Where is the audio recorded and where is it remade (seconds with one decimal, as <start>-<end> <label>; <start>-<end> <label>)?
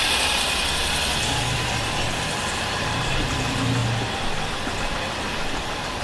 0.0-0.6 remade; 0.6-2.3 recorded; 2.3-3.8 remade; 3.8-4.8 recorded; 4.8-6.0 remade